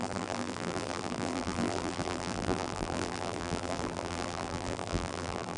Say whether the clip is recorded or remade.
remade